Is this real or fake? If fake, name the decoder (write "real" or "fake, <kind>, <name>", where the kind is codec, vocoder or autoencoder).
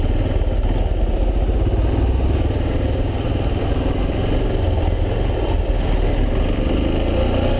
real